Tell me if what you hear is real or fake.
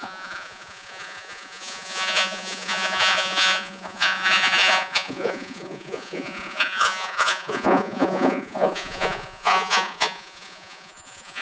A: fake